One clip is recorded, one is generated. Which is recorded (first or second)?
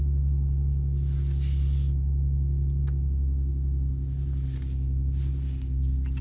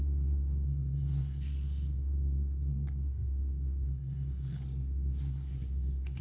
first